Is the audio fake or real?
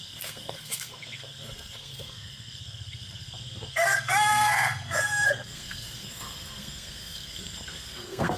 fake